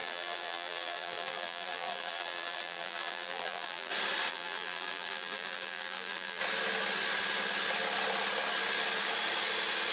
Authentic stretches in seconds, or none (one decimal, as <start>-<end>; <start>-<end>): 3.9-4.3; 6.4-9.9